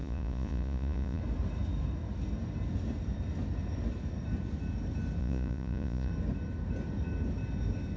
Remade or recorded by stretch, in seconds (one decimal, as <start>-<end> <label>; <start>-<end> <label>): 0.0-1.2 remade; 1.2-5.2 recorded; 5.2-6.1 remade; 6.1-8.0 recorded